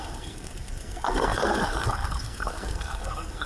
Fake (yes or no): yes